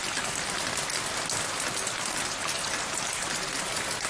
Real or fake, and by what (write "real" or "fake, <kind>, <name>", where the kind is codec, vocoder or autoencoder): real